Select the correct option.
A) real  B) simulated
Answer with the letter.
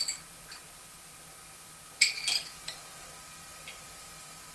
B